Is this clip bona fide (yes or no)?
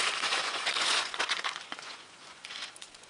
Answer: no